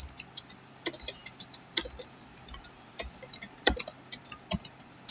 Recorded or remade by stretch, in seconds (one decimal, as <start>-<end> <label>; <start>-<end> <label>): 0.0-5.1 remade